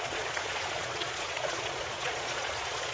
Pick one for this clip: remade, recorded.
remade